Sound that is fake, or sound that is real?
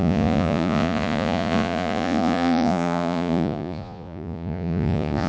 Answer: fake